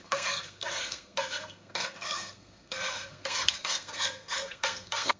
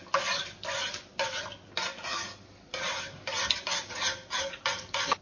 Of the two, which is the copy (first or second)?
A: first